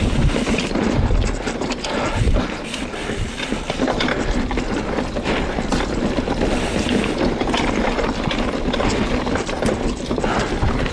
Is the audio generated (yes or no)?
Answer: no